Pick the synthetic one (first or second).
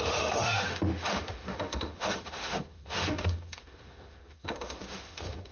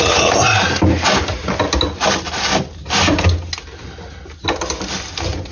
first